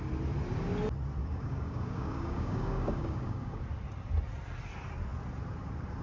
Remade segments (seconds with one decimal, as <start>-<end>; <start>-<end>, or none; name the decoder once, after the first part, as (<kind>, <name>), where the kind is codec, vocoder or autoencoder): 1.2-3.6 (codec, DAC)